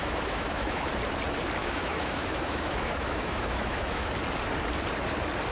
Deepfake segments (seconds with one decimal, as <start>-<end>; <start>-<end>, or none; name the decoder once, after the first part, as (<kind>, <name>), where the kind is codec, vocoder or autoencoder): 0.0-0.9 (autoencoder, DAC-VAE); 1.6-4.1